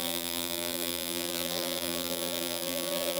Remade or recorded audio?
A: remade